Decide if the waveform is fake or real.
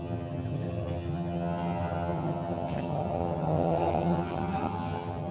fake